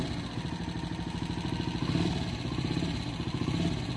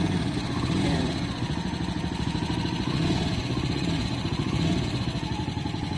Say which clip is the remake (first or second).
second